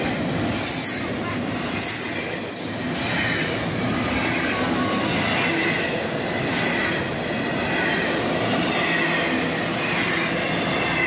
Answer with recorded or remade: recorded